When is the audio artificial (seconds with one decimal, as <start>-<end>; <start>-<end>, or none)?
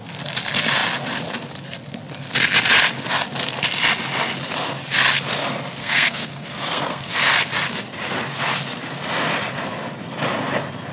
5.8-7.1